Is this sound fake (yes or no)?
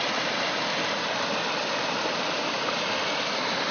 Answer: no